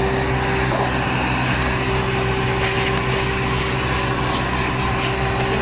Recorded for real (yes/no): yes